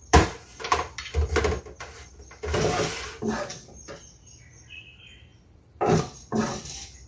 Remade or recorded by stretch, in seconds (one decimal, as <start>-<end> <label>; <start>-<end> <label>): 0.0-1.4 remade; 1.4-5.3 recorded; 5.3-6.0 remade; 6.0-7.1 recorded